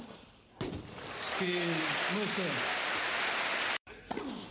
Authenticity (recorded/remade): remade